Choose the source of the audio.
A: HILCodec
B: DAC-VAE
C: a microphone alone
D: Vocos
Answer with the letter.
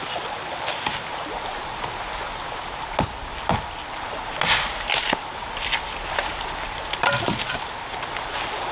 C